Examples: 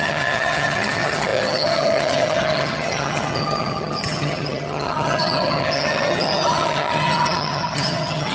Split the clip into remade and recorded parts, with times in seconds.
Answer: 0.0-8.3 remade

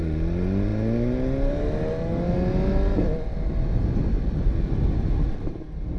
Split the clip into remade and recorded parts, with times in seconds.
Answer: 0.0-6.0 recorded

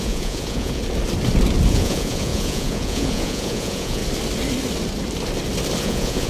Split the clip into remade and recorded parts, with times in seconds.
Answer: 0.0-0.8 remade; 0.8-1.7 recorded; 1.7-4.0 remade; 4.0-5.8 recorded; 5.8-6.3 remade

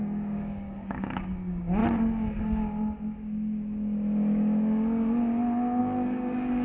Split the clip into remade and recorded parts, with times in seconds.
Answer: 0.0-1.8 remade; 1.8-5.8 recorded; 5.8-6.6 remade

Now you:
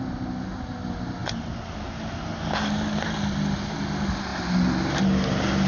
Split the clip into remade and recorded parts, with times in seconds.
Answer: 0.0-5.7 recorded

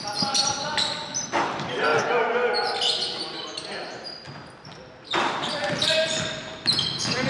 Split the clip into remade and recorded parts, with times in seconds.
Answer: 0.0-1.9 remade; 1.9-5.3 recorded; 5.3-7.3 remade